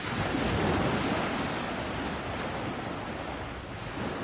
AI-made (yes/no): no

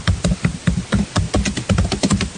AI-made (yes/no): no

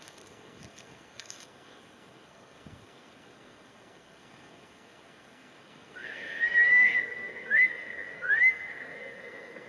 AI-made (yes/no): yes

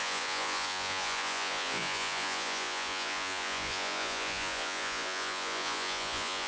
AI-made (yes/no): yes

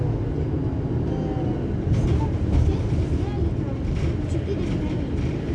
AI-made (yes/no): no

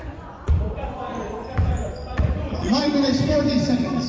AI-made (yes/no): yes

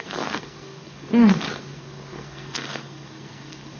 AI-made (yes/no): yes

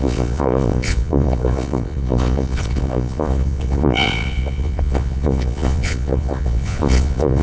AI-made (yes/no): yes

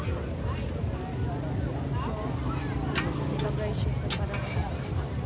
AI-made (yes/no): no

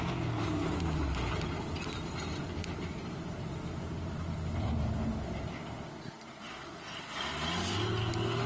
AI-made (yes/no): no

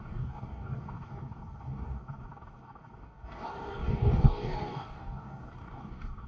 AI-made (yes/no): yes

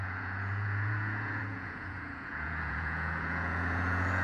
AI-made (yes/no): yes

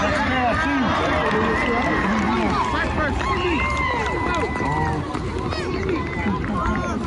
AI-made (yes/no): no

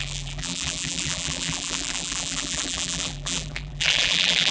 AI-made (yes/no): yes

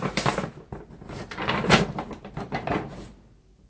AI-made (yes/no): no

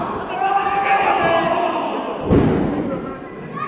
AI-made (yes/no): no